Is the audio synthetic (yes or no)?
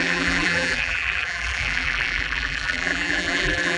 yes